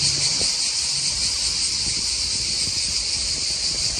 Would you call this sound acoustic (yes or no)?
yes